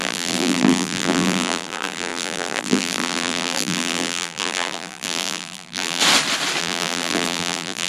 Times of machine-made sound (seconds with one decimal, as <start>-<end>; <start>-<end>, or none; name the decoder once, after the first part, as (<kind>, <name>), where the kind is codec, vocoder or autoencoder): 0.0-6.0 (vocoder, BigVGAN v2); 6.6-7.9